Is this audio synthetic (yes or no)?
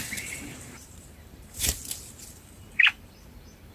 yes